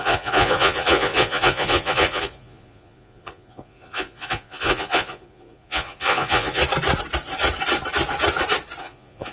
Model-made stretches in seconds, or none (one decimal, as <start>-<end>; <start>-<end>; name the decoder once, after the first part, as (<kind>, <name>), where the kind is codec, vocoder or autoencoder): 0.0-6.6 (vocoder, Vocos); 8.8-9.3